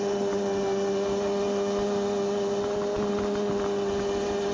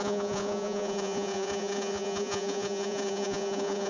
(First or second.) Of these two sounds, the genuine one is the first